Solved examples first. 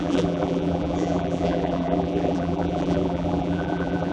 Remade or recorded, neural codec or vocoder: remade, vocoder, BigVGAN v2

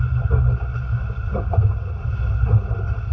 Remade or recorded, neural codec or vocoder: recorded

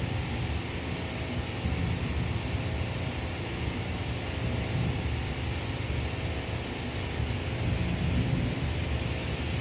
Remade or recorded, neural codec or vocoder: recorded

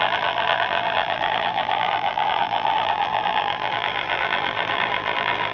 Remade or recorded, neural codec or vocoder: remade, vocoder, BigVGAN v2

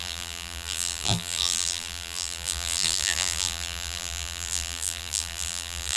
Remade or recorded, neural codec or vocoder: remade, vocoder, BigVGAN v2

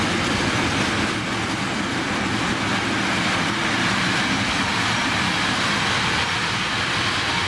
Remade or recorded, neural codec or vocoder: recorded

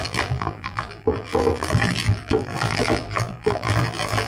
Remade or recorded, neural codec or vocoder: remade, vocoder, BigVGAN v2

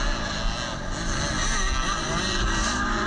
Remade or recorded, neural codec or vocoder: recorded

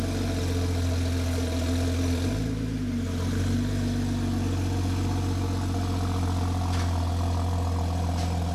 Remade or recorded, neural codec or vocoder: recorded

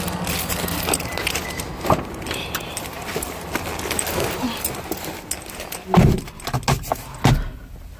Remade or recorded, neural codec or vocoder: recorded